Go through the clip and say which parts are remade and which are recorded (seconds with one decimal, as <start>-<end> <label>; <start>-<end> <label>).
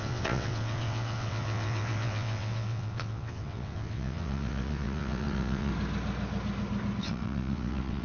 0.0-5.7 remade; 5.7-7.0 recorded; 7.0-8.0 remade